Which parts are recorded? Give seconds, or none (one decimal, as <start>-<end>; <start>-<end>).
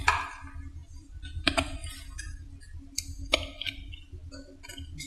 0.0-5.1